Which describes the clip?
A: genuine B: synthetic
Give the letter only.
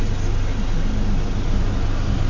A